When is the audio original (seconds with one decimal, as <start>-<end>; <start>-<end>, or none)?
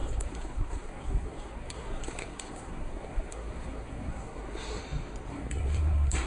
4.8-5.3